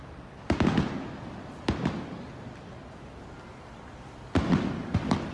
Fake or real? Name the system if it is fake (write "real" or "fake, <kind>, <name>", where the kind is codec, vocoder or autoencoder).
real